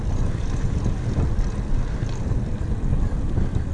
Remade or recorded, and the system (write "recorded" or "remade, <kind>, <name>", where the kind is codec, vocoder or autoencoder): recorded